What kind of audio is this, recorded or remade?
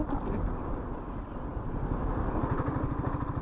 recorded